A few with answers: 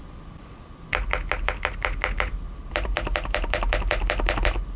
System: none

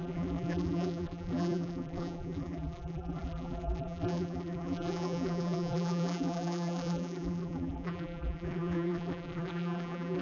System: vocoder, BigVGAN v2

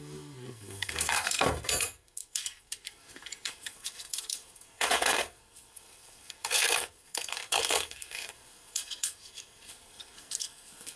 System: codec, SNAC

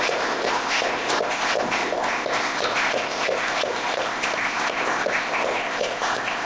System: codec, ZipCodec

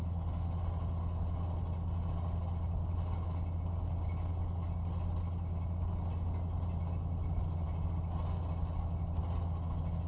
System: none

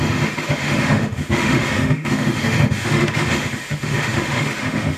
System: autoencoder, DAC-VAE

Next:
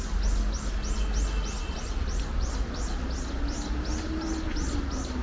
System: none